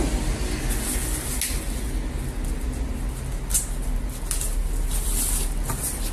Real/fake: real